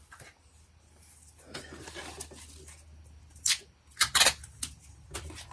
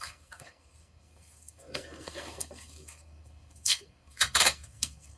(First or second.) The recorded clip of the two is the first